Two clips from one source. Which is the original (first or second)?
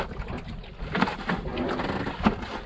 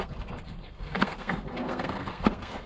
first